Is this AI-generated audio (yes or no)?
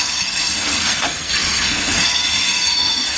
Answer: yes